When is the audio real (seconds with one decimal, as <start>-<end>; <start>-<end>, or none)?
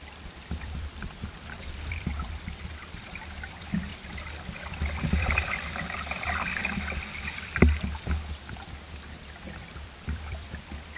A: 3.9-5.1; 6.6-9.6